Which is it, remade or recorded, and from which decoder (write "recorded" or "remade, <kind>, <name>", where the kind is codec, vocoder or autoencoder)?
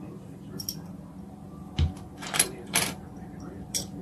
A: remade, vocoder, BigVGAN v2